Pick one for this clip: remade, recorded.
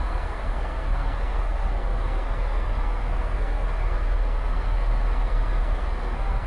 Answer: remade